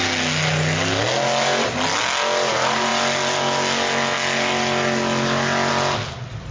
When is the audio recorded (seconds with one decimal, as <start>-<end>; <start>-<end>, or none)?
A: 0.0-6.5